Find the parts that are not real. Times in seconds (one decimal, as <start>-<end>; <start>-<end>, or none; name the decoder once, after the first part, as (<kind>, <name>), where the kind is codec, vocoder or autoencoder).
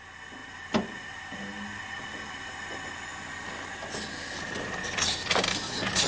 none